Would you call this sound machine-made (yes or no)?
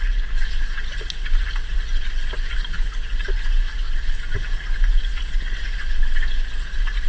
no